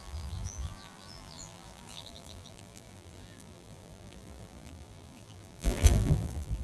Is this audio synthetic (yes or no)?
yes